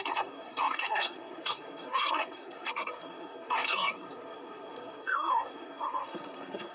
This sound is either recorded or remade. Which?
remade